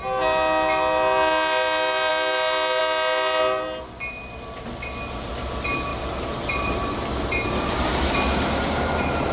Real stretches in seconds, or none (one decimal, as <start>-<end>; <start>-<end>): 0.0-5.9